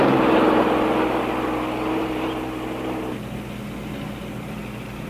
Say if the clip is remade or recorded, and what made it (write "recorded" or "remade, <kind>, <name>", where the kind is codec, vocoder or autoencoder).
recorded